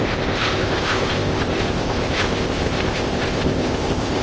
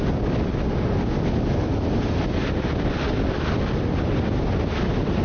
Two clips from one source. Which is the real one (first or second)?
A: second